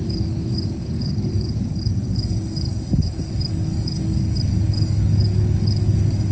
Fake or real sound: fake